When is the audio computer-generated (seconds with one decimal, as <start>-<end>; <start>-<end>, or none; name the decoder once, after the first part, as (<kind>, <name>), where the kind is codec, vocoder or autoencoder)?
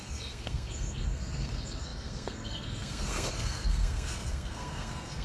0.0-5.2 (codec, SNAC)